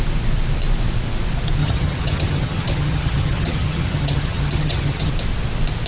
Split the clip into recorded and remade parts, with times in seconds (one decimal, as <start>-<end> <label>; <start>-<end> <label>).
0.0-1.6 recorded; 1.6-5.1 remade; 5.1-5.9 recorded